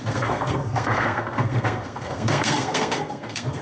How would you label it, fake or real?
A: fake